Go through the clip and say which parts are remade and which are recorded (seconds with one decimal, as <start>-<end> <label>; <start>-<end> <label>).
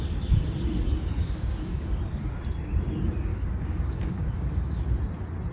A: 0.0-1.2 recorded; 1.2-2.0 remade; 2.0-3.3 recorded; 3.3-4.7 remade; 4.7-5.5 recorded